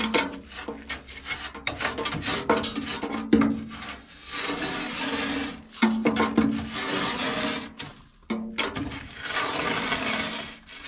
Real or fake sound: real